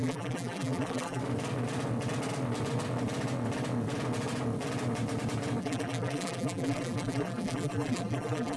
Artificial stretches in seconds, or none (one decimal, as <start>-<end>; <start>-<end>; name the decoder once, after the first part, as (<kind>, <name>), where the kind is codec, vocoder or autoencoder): 0.0-1.2 (vocoder, BigVGAN v2); 5.6-8.6

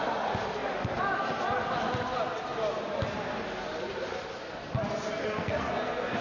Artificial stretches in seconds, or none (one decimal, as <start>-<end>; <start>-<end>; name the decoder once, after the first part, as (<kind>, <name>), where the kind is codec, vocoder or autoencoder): 5.4-6.2 (codec, SNAC)

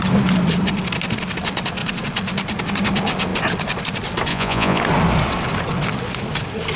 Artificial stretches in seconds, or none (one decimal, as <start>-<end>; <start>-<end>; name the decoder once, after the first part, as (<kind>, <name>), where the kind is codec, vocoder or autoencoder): 4.3-4.8 (vocoder, Vocos)

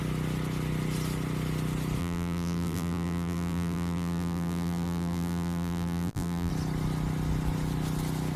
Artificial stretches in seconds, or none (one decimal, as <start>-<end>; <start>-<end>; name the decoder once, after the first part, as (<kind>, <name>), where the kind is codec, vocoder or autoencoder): 2.0-6.5 (vocoder, BigVGAN v2)